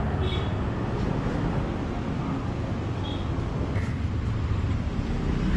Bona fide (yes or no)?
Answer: yes